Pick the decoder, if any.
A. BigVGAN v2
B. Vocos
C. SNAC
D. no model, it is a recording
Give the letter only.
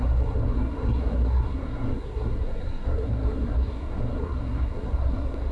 C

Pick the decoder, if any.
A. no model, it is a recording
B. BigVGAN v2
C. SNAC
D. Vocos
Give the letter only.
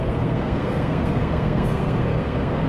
C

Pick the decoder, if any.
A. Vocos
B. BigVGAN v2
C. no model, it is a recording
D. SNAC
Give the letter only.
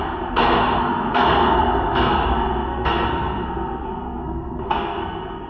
D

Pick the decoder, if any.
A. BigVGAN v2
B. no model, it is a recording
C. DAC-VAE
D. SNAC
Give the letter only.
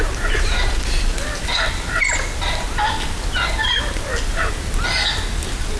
B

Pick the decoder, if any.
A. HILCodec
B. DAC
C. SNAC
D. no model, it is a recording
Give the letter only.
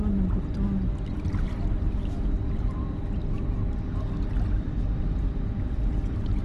D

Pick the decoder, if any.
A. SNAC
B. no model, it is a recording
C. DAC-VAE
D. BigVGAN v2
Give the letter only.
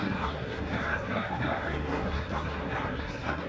A